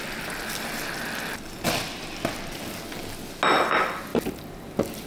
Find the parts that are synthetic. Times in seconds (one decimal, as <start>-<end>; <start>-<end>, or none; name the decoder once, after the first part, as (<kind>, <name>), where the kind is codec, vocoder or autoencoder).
4.1-5.1 (vocoder, BigVGAN v2)